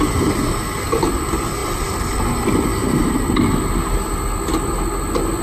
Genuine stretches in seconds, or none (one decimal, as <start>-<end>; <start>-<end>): 0.0-1.6; 2.2-5.4